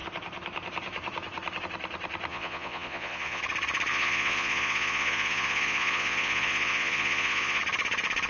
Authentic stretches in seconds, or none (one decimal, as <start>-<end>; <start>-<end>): 0.0-2.3; 3.4-3.9; 7.6-8.3